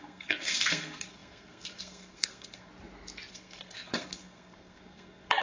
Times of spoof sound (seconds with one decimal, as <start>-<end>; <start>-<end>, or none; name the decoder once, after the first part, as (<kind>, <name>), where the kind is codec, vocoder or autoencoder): 0.0-2.7 (codec, SNAC); 3.3-5.4